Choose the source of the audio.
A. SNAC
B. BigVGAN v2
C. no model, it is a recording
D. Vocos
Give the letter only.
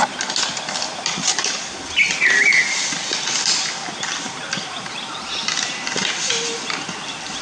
C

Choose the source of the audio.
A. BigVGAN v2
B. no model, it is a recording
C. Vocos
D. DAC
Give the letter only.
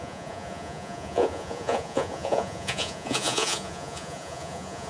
C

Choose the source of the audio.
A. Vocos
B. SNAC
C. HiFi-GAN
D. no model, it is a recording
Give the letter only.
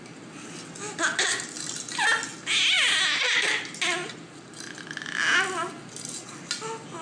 D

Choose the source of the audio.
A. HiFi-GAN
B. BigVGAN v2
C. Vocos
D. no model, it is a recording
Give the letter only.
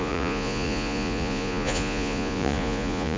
C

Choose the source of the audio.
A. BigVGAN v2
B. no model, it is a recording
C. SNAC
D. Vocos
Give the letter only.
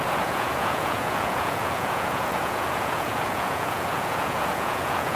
D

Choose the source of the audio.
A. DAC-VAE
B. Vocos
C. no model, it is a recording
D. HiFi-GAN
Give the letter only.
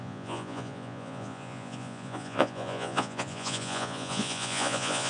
B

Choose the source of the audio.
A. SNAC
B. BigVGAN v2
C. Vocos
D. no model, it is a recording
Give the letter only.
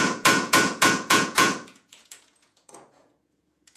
C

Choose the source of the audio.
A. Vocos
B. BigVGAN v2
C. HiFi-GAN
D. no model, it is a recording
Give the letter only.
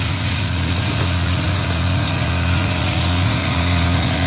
A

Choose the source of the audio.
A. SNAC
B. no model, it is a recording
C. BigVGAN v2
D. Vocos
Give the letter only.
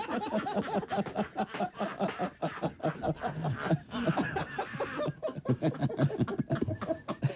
B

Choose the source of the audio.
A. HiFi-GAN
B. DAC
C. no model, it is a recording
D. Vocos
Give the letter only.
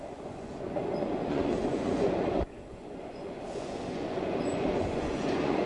D